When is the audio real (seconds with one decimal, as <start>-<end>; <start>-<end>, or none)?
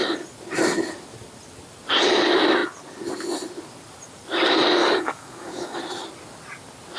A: 0.0-4.8; 5.8-7.0